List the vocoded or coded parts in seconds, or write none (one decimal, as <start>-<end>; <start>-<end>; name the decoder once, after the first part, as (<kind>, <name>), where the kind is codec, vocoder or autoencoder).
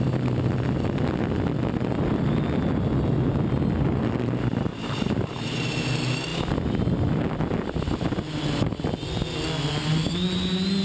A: 4.7-5.8 (vocoder, BigVGAN v2)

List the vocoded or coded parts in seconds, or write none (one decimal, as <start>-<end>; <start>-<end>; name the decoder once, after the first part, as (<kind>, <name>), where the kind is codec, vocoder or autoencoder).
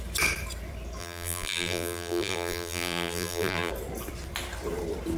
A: 1.0-3.7 (vocoder, BigVGAN v2)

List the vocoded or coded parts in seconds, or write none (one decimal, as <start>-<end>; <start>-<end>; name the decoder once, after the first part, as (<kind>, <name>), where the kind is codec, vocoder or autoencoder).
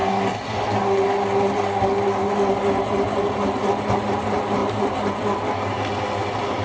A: 4.6-5.2 (vocoder, BigVGAN v2)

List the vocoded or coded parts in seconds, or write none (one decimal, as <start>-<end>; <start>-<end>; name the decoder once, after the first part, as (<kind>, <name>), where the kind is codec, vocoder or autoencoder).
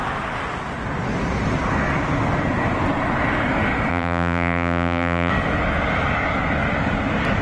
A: 3.9-5.3 (vocoder, BigVGAN v2)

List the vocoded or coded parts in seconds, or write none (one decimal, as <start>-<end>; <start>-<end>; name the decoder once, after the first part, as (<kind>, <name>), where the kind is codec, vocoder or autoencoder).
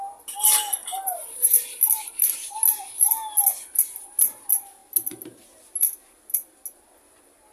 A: 0.8-1.8 (vocoder, BigVGAN v2)